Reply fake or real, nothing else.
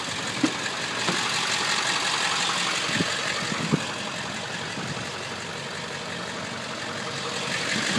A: real